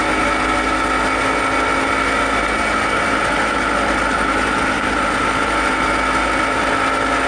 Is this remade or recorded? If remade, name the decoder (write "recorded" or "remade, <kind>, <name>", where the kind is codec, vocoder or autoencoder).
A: recorded